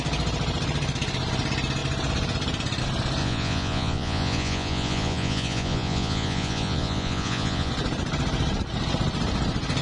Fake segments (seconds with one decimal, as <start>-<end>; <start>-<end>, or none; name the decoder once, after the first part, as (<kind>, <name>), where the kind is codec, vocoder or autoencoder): 3.2-7.7 (vocoder, Vocos)

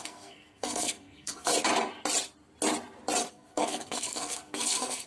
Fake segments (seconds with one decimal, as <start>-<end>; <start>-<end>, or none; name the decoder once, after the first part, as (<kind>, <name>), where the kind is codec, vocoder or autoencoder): 0.0-1.5 (codec, SNAC); 3.3-5.1

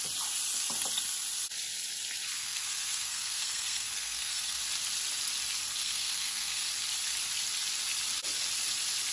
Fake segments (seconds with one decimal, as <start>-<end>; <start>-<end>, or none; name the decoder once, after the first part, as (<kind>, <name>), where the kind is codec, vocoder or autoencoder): 2.4-4.6 (codec, SNAC); 5.8-6.7